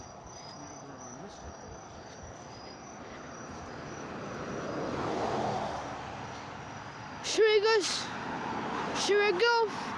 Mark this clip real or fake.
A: real